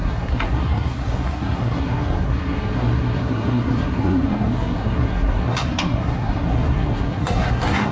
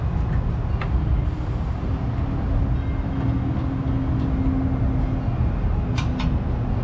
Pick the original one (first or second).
second